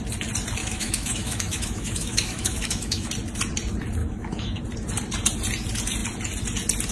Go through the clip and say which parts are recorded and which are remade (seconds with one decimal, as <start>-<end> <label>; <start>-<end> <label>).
0.0-0.6 recorded; 0.6-3.1 remade; 3.1-4.0 recorded; 4.0-4.6 remade; 4.6-6.9 recorded